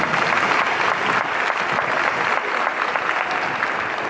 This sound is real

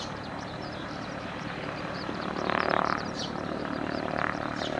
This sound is fake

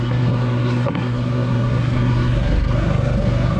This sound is fake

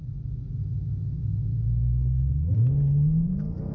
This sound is real